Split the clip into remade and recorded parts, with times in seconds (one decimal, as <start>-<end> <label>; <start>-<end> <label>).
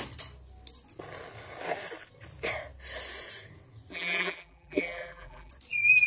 0.0-3.9 recorded; 3.9-5.5 remade; 5.5-6.1 recorded